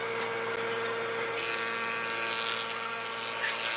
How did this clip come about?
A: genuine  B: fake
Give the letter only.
A